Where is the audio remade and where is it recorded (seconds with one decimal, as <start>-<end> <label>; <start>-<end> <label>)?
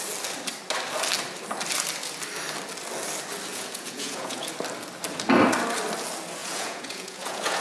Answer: 0.0-3.5 recorded; 3.5-4.5 remade; 4.5-6.4 recorded; 6.4-7.6 remade